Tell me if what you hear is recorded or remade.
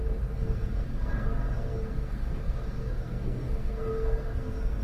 remade